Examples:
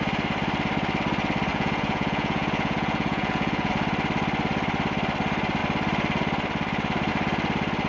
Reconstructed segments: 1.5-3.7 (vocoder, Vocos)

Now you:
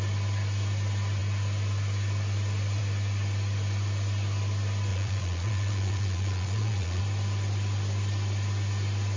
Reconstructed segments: 4.9-7.0 (vocoder, Vocos)

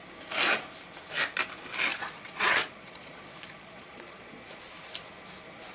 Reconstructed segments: 1.9-4.6 (vocoder, Vocos)

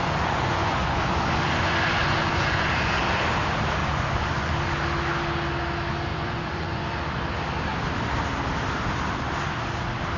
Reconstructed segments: 0.0-3.0 (vocoder, Vocos); 3.8-4.5; 6.1-6.9

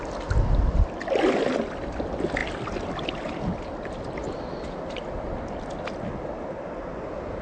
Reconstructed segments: none

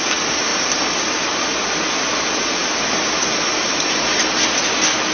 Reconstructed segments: none